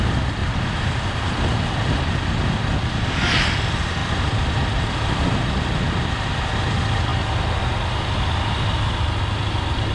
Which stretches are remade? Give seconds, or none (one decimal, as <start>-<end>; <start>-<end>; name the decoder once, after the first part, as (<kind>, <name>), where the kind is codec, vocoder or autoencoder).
0.4-1.0 (vocoder, BigVGAN v2); 4.0-4.8